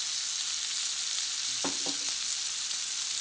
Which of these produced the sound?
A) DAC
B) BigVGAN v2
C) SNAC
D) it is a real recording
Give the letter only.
D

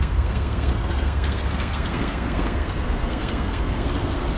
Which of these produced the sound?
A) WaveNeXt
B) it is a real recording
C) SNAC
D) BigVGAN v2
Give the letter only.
C